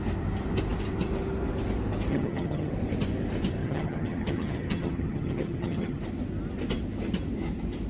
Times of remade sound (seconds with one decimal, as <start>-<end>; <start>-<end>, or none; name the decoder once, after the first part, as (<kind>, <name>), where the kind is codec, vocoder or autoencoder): 2.1-2.7 (vocoder, HiFi-GAN); 3.6-6.0